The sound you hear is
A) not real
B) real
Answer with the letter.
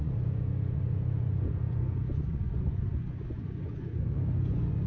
A